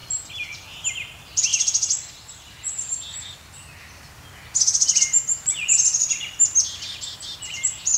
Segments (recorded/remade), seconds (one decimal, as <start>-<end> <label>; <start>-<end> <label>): 0.0-8.0 recorded